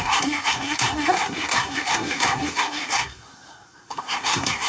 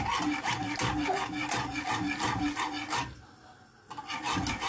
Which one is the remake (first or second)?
first